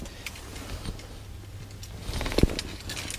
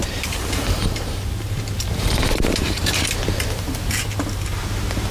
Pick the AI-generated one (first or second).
second